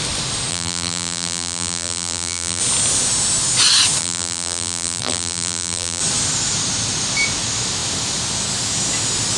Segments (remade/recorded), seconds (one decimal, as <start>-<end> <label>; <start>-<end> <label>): 0.0-0.5 recorded; 0.5-2.6 remade; 2.6-4.0 recorded; 4.0-6.0 remade; 6.0-9.4 recorded

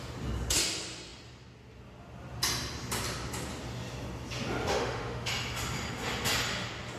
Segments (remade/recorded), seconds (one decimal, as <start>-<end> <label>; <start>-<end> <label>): 0.0-4.7 recorded; 4.7-5.3 remade; 5.3-7.0 recorded

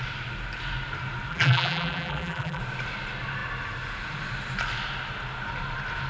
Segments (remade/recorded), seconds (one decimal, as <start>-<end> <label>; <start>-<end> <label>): 0.0-1.3 recorded; 1.3-2.6 remade; 2.6-6.1 recorded

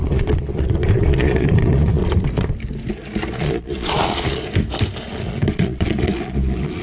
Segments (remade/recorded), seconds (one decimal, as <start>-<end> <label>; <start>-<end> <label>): 0.0-2.0 remade; 2.0-3.3 recorded; 3.3-4.4 remade; 4.4-5.0 recorded; 5.0-6.8 remade